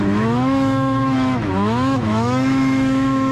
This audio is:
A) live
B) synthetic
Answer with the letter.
B